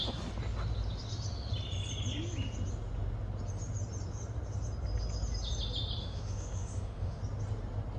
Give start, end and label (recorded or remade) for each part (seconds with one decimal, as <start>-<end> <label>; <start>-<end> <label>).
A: 0.0-6.0 recorded; 6.0-7.2 remade; 7.2-8.0 recorded